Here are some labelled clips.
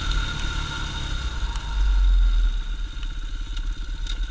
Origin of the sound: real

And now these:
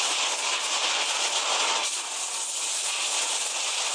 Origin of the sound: real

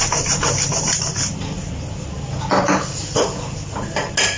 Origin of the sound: real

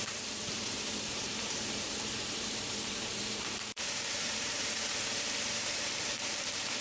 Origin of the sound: fake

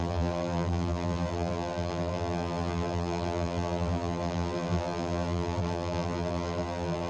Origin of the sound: fake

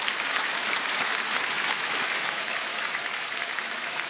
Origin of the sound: fake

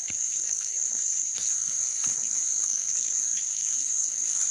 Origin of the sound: fake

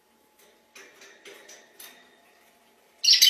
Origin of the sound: real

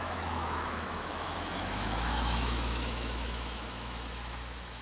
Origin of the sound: fake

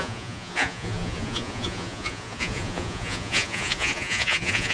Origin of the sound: fake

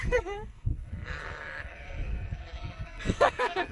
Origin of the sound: fake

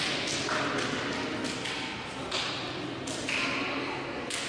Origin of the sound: real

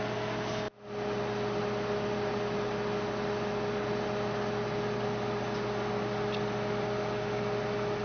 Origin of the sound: real